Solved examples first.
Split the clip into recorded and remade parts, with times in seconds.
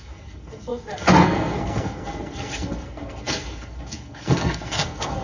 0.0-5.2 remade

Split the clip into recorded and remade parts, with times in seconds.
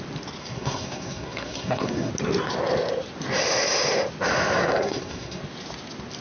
0.0-0.4 recorded; 0.4-2.1 remade; 2.1-4.6 recorded; 4.6-5.4 remade; 5.4-6.2 recorded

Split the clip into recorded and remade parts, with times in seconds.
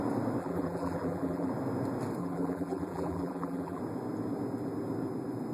0.0-0.4 recorded; 0.4-1.5 remade; 1.5-2.2 recorded; 2.2-3.8 remade; 3.8-5.5 recorded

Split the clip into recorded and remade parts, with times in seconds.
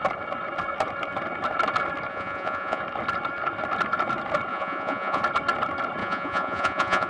0.0-2.1 recorded; 2.1-2.8 remade; 2.8-4.5 recorded; 4.5-5.2 remade; 5.2-6.0 recorded; 6.0-7.1 remade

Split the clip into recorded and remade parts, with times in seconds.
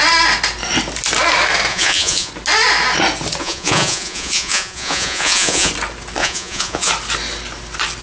0.0-1.7 recorded; 1.7-2.3 remade; 2.3-3.4 recorded; 3.4-5.7 remade; 5.7-6.2 recorded; 6.2-6.9 remade; 6.9-8.0 recorded